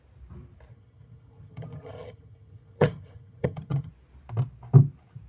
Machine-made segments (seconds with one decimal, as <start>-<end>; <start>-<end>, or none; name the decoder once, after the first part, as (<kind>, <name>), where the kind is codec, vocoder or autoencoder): 0.7-3.9 (vocoder, HiFi-GAN)